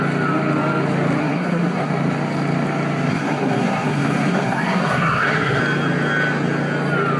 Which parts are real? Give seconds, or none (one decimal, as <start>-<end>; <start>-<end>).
0.0-1.2; 1.9-3.1; 5.6-7.2